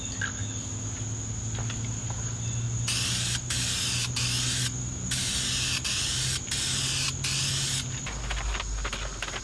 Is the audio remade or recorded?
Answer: recorded